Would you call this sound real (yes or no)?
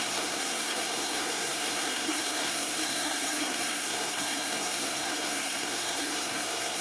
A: no